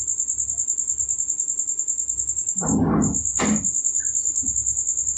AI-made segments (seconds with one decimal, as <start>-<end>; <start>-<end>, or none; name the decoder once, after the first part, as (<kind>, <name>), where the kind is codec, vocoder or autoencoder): none